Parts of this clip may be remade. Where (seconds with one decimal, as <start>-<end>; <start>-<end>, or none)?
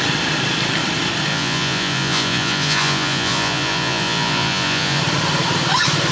1.3-5.0